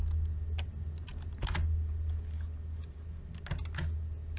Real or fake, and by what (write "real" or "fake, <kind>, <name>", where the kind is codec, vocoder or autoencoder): real